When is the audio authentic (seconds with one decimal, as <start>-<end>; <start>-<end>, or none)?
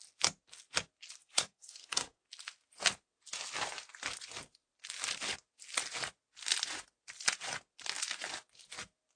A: 0.0-1.2; 2.2-9.2